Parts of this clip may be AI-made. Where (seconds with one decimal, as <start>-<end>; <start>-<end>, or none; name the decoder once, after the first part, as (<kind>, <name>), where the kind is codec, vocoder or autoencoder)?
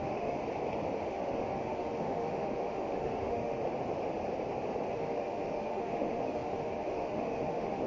0.0-0.4 (autoencoder, DAC-VAE); 1.1-3.6; 4.9-7.9